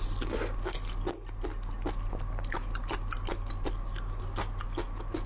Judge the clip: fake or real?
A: real